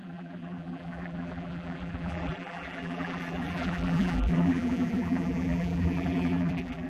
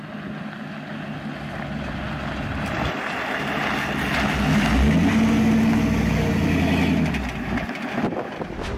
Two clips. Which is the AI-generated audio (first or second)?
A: first